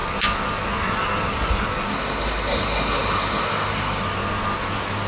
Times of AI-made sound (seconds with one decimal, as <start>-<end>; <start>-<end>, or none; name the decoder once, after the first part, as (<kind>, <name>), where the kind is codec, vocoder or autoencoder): 1.9-4.0 (autoencoder, DAC-VAE)